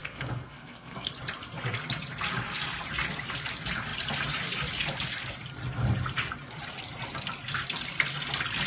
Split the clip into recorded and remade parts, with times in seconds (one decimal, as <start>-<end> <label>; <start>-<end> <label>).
0.0-1.1 remade; 1.1-8.7 recorded